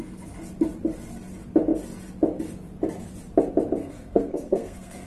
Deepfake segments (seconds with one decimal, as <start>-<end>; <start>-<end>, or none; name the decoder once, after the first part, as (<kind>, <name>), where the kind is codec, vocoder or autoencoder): 3.8-5.1 (codec, SNAC)